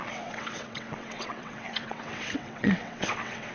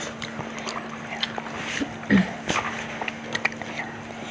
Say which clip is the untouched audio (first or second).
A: second